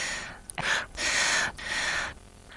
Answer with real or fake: real